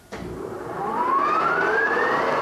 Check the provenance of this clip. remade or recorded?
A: remade